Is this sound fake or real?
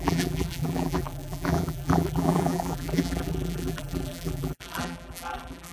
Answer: fake